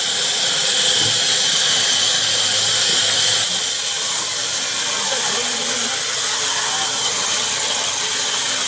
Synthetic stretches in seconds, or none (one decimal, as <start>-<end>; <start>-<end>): 7.0-8.0